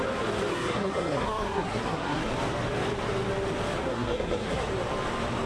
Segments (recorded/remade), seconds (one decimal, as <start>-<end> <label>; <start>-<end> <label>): 0.0-0.5 recorded; 0.5-2.3 remade; 2.3-3.9 recorded; 3.9-4.7 remade; 4.7-5.5 recorded